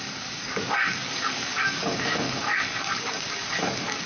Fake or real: fake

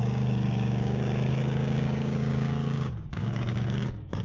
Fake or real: fake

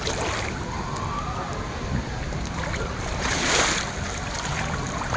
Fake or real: real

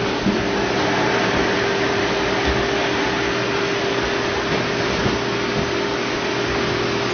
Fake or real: real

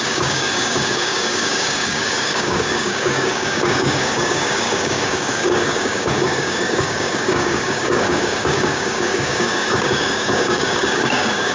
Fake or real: fake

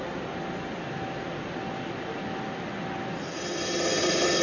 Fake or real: real